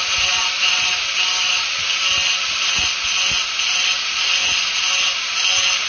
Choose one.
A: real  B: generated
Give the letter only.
A